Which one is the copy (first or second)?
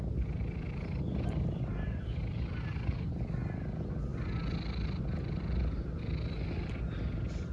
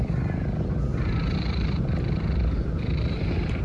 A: second